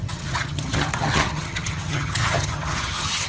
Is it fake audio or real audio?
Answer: fake